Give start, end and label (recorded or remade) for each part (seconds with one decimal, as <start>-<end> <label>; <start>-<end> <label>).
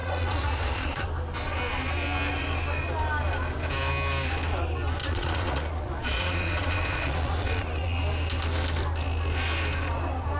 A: 0.0-1.1 remade; 1.1-5.0 recorded; 5.0-8.0 remade; 8.0-10.4 recorded